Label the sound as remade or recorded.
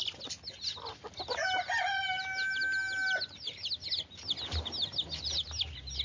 recorded